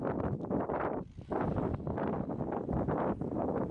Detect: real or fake real